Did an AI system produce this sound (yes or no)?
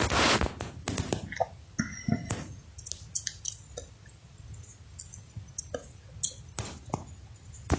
no